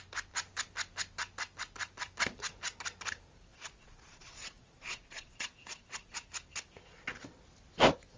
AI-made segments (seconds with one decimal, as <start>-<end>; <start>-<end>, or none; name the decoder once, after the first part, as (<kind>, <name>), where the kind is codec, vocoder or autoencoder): 3.5-6.3 (vocoder, Vocos)